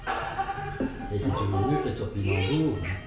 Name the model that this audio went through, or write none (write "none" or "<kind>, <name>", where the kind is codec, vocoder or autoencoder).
none